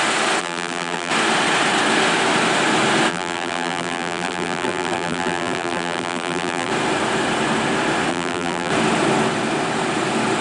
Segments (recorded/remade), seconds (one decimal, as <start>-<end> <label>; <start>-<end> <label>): 0.0-0.4 recorded; 0.4-1.1 remade; 1.1-3.1 recorded; 3.1-6.7 remade; 6.7-8.1 recorded; 8.1-8.7 remade; 8.7-10.4 recorded